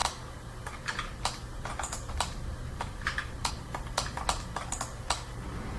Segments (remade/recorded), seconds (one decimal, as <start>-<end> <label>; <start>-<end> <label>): 0.0-3.5 remade; 3.5-5.8 recorded

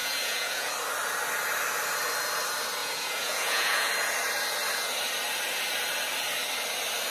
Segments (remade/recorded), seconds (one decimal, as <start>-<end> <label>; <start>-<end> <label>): 0.0-0.7 remade; 0.7-2.8 recorded; 2.8-3.9 remade; 3.9-7.1 recorded